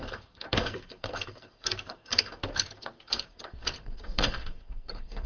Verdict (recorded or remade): remade